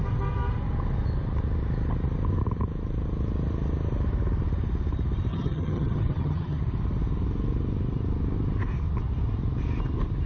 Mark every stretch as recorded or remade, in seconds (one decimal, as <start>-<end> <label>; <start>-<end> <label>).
0.0-5.3 recorded; 5.3-6.6 remade; 6.6-10.3 recorded